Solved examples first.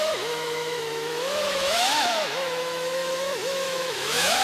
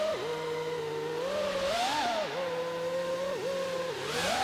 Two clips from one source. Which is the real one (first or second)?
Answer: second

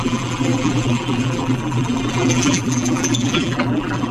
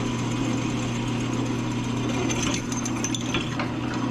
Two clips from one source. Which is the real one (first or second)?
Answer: second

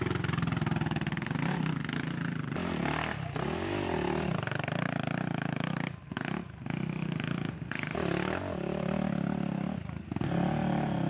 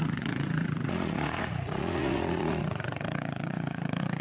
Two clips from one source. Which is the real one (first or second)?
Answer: first